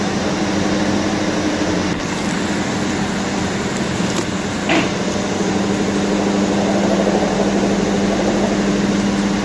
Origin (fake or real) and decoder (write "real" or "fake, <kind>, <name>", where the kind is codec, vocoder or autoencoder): real